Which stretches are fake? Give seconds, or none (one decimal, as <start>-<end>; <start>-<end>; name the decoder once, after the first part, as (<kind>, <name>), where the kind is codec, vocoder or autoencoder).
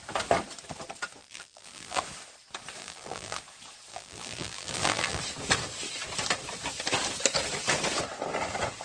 1.2-2.0 (vocoder, BigVGAN v2); 2.8-3.4; 3.9-5.2